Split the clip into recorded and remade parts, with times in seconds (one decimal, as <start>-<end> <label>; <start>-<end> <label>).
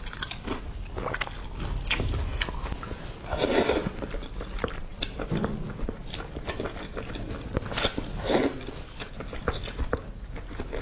0.0-10.8 recorded